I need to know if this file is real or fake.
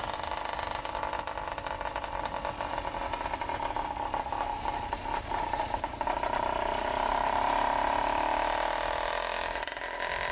real